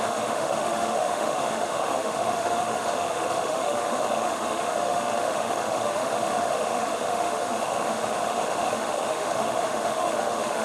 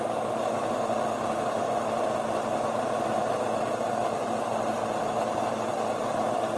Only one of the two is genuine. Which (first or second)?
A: second